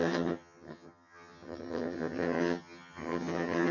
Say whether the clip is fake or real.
fake